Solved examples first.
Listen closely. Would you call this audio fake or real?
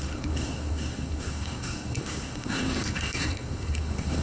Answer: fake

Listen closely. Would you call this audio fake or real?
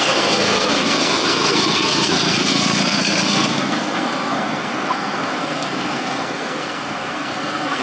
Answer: fake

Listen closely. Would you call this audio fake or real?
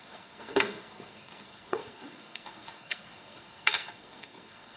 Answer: fake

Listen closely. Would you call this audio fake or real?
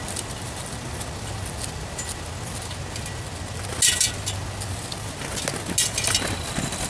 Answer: real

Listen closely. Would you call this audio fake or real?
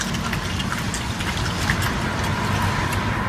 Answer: real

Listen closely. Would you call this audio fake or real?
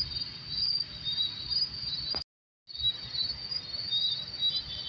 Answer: real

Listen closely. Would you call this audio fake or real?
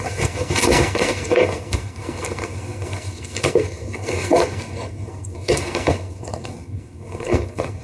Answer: fake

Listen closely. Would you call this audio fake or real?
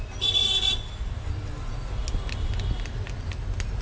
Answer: real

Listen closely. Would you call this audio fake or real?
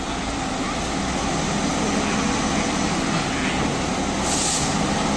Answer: real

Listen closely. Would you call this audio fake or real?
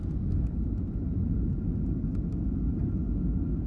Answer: real